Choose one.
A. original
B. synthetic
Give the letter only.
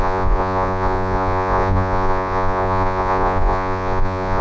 B